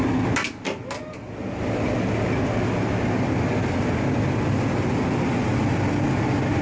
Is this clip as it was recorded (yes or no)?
yes